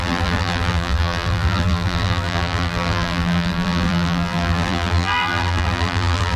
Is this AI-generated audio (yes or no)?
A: yes